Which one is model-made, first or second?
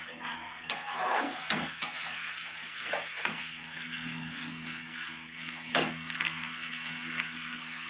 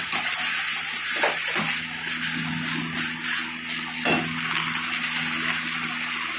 first